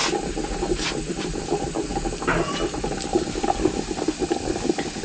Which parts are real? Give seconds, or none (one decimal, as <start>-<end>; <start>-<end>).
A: 0.0-5.0